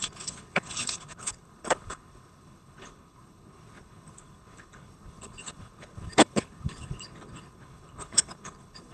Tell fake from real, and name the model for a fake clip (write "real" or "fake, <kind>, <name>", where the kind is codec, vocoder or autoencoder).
fake, codec, HILCodec